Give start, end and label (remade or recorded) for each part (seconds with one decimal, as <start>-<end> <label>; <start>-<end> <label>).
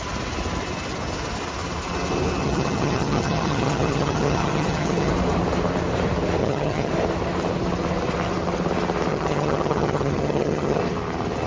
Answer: 0.0-2.4 recorded; 2.4-5.1 remade; 5.1-6.4 recorded; 6.4-6.9 remade; 6.9-9.1 recorded; 9.1-10.8 remade; 10.8-11.5 recorded